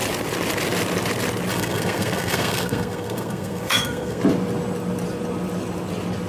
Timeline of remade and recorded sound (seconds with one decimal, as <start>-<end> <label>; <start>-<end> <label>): 0.0-1.5 recorded; 1.5-4.2 remade; 4.2-6.3 recorded